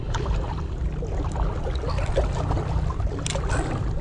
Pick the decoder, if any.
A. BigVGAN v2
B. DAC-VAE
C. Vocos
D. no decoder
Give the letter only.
D